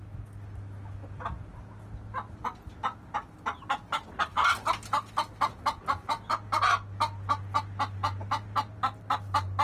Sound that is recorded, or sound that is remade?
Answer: recorded